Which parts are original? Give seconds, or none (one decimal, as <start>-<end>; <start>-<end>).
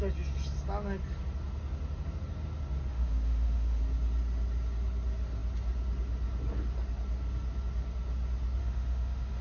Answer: 0.0-2.9; 3.8-8.6